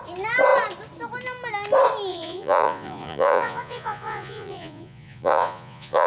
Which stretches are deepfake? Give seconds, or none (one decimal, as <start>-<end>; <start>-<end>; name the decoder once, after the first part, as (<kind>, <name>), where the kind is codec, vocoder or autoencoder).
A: 2.1-6.1 (vocoder, Vocos)